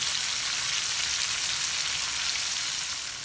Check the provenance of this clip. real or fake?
real